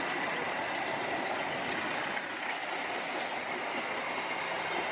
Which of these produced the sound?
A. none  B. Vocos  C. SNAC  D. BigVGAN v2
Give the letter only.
A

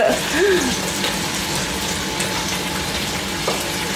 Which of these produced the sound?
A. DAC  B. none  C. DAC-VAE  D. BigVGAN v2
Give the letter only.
B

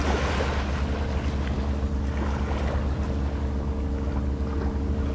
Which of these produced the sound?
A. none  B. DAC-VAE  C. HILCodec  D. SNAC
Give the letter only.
A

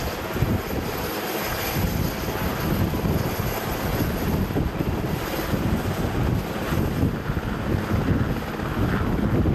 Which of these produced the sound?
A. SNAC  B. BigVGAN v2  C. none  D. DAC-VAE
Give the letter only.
C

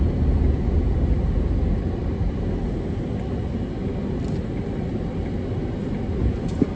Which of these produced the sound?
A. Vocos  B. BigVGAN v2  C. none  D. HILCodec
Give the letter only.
C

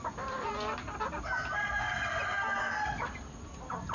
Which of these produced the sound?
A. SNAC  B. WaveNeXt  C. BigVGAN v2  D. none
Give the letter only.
D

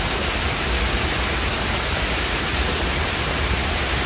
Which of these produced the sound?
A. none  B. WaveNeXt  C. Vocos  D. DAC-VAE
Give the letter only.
A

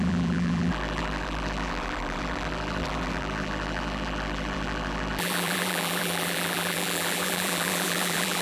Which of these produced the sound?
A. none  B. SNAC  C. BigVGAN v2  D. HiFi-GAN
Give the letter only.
C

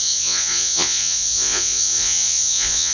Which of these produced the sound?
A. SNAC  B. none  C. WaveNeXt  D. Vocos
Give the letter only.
D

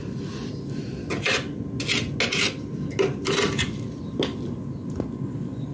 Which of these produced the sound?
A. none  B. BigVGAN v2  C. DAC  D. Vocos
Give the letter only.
A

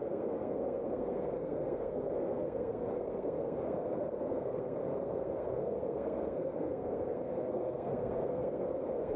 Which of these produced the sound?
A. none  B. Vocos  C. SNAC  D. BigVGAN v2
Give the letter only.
C